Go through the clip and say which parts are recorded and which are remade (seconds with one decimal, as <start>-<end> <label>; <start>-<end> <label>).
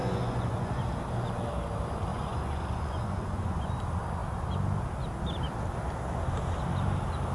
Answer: 0.0-0.8 remade; 0.8-2.1 recorded; 2.1-3.7 remade; 3.7-7.3 recorded